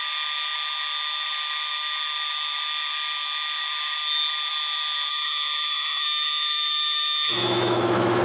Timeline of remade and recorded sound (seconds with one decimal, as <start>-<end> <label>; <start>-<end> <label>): 0.0-5.1 recorded; 5.1-8.2 remade